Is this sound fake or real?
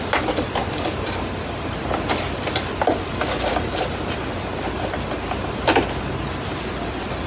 real